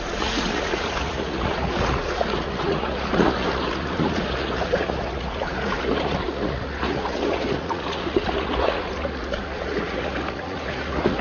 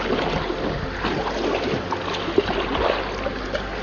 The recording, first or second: second